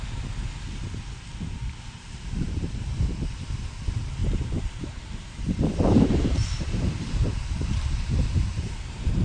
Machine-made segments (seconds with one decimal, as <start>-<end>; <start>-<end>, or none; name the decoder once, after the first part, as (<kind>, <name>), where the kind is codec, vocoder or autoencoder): 4.2-9.2 (vocoder, BigVGAN v2)